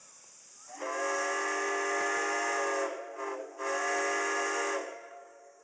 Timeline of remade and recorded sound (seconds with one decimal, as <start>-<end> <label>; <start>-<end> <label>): 0.0-4.8 recorded; 4.8-5.6 remade